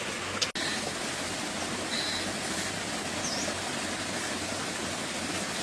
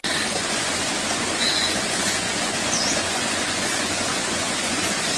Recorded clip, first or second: first